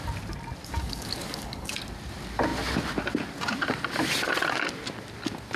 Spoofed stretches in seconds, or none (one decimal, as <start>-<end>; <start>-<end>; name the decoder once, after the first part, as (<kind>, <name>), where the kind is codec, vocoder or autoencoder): 0.6-1.8 (codec, DAC)